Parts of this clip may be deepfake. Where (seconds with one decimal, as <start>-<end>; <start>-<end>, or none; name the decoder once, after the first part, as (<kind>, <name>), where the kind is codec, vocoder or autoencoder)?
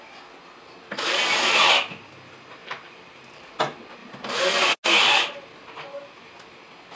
2.6-3.4 (vocoder, BigVGAN v2); 4.0-4.5